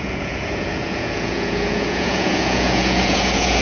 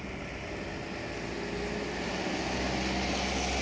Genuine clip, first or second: second